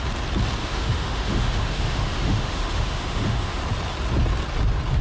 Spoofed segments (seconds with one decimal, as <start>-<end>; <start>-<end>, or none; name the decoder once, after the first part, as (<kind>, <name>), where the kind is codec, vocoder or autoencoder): 0.6-3.6 (autoencoder, DAC-VAE)